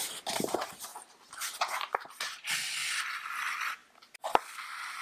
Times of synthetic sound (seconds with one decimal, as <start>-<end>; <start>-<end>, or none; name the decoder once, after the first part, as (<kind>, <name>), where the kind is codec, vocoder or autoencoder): 0.9-2.2 (vocoder, BigVGAN v2)